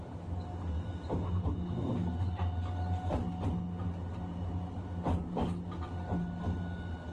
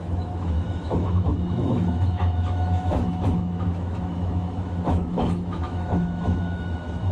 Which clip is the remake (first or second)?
second